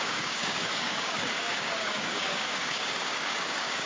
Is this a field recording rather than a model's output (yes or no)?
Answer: no